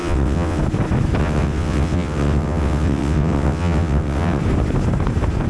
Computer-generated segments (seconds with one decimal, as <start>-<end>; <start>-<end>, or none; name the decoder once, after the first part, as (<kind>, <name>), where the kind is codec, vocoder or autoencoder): 0.0-0.6 (vocoder, WaveNeXt); 1.2-4.4